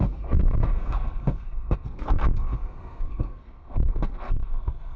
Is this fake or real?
fake